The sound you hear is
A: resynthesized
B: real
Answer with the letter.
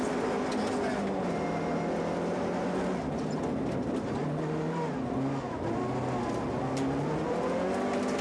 B